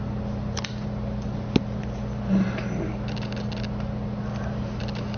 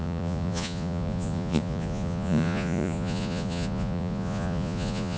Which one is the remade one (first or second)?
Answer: second